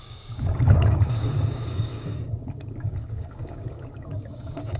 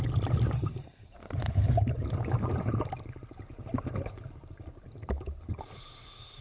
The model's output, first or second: first